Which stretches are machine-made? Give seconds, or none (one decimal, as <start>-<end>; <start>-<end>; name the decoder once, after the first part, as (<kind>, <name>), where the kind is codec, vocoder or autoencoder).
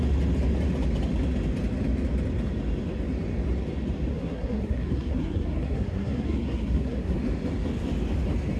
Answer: 4.1-7.2 (codec, SNAC)